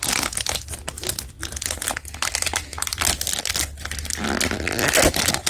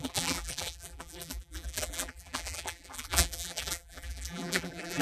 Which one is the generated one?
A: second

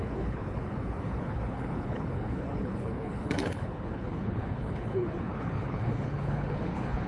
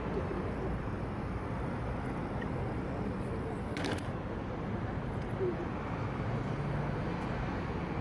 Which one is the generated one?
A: first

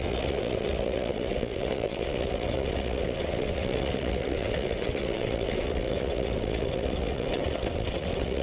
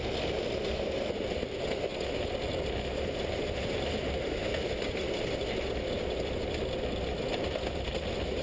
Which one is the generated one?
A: first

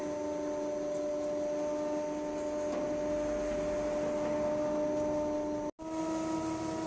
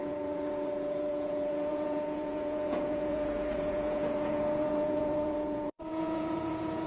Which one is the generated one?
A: second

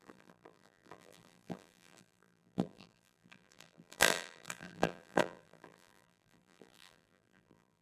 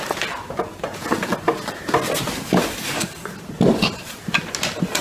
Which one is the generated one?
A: first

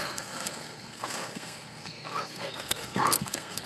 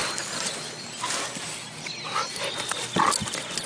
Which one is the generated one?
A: first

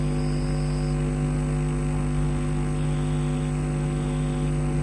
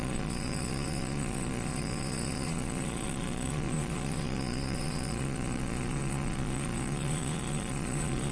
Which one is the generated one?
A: second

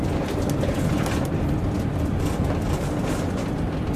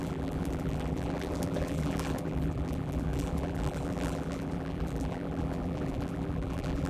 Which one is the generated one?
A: second